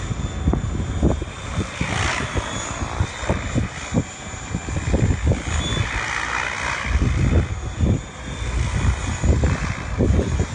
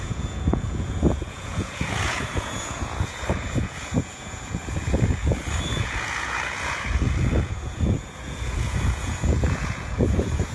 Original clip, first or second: first